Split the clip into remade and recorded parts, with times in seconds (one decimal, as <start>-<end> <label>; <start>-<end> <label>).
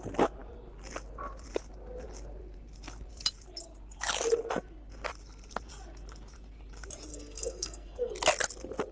0.0-7.1 recorded; 7.1-8.1 remade; 8.1-8.9 recorded